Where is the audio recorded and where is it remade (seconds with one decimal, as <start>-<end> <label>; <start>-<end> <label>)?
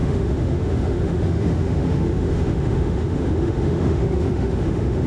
0.0-5.1 remade